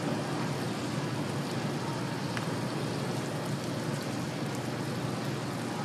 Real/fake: real